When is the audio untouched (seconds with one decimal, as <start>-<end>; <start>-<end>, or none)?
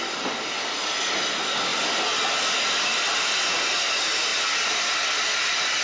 0.0-4.3